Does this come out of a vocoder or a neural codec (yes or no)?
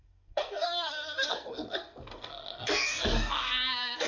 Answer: yes